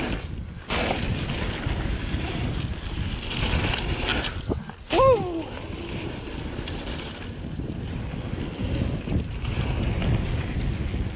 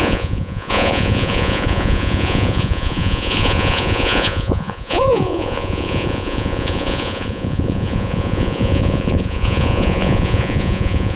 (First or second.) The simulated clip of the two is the second